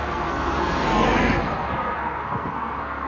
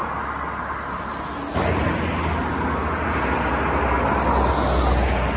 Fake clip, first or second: first